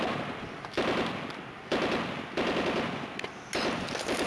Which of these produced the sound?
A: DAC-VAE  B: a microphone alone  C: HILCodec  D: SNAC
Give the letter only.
B